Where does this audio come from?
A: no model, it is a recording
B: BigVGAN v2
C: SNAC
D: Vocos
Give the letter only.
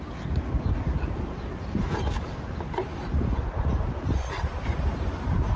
B